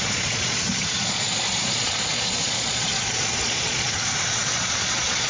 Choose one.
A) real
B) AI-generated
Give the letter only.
B